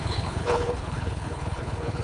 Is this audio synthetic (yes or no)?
yes